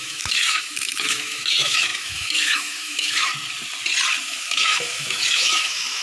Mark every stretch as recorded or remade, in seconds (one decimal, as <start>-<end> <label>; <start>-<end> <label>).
0.0-3.3 remade; 3.3-4.2 recorded; 4.2-6.0 remade